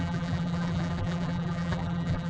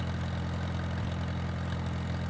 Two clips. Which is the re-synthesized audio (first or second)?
first